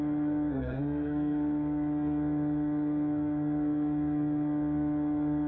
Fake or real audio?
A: fake